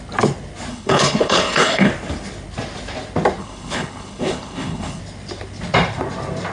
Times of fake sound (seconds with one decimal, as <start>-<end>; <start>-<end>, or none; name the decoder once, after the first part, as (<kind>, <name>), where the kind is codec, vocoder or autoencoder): 0.7-1.9 (codec, HILCodec); 3.4-5.0